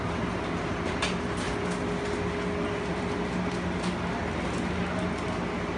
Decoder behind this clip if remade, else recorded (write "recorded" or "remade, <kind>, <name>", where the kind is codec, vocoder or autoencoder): recorded